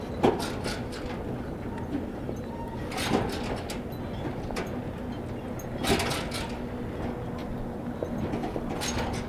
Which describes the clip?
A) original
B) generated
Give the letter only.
A